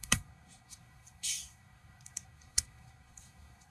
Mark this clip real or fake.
fake